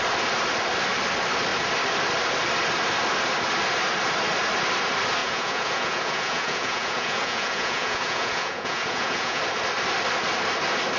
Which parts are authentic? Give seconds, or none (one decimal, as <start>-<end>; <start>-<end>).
0.0-5.2; 9.4-11.0